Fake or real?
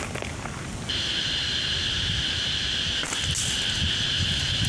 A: real